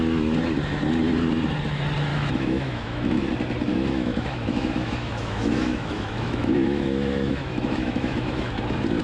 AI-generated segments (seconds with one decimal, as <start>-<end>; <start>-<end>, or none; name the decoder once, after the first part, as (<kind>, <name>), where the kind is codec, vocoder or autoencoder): 2.1-3.3 (autoencoder, DAC-VAE); 3.7-8.5